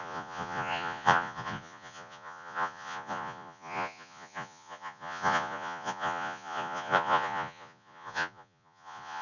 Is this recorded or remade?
remade